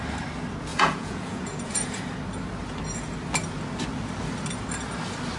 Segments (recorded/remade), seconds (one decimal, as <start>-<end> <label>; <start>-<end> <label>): 0.0-0.7 recorded; 0.7-2.0 remade; 2.0-5.4 recorded